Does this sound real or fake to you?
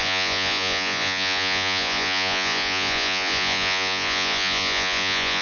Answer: fake